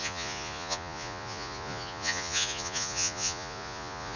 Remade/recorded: remade